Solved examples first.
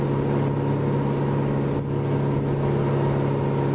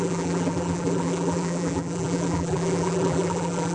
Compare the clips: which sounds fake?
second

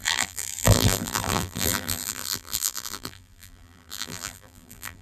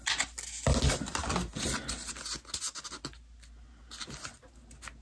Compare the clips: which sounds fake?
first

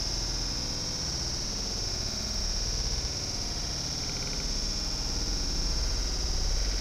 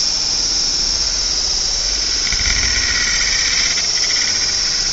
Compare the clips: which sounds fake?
second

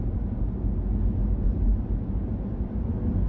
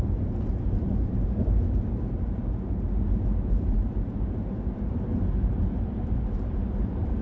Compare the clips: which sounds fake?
second